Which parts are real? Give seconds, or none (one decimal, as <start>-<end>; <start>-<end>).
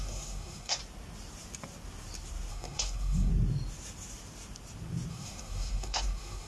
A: 0.8-2.5; 3.3-5.1